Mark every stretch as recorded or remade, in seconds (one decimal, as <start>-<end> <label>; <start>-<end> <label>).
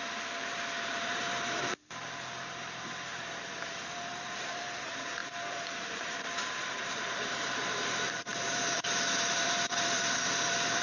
0.0-10.8 remade